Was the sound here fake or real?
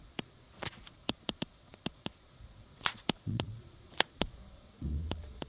fake